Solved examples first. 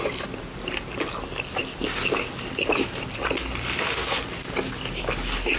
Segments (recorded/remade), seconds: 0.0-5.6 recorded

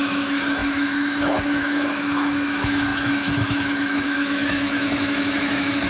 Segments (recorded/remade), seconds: 0.0-5.9 remade

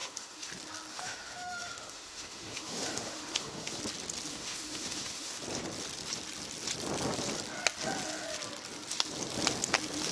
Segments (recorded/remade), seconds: 0.0-0.5 remade; 0.5-0.9 recorded; 0.9-3.8 remade; 3.8-4.3 recorded; 4.3-5.4 remade; 5.4-10.1 recorded